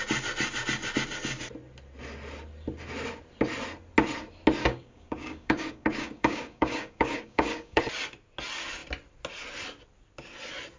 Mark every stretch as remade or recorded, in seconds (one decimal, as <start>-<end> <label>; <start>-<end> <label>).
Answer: 0.0-4.6 recorded; 4.6-7.8 remade; 7.8-10.8 recorded